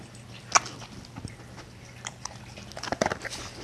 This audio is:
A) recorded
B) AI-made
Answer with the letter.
A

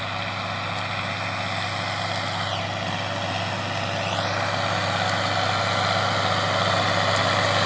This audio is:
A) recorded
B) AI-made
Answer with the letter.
A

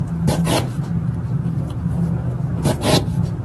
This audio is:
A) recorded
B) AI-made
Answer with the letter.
A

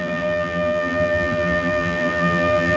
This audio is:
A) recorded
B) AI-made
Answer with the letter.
B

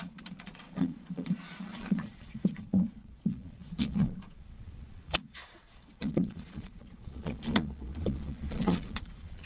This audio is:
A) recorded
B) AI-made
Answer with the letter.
B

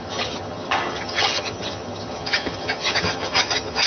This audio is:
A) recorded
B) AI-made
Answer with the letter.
B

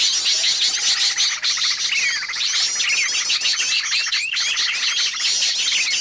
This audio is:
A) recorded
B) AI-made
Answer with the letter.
A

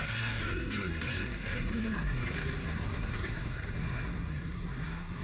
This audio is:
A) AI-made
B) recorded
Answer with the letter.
A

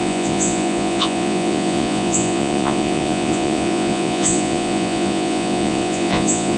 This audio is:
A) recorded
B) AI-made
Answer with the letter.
B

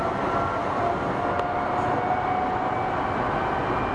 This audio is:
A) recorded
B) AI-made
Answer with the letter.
A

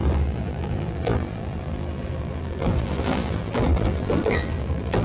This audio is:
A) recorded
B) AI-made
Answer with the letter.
B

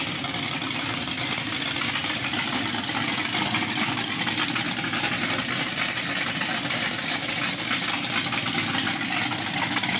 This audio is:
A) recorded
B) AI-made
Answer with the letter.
A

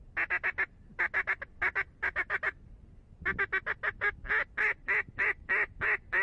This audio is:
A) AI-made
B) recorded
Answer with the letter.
B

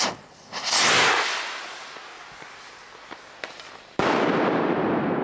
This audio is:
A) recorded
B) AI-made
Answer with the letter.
A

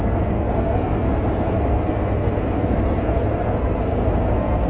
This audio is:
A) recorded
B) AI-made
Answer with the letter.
B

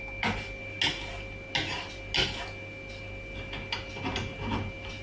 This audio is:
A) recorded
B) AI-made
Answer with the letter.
A